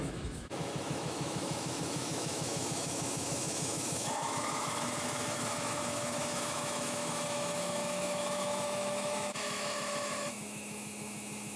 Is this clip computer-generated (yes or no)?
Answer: yes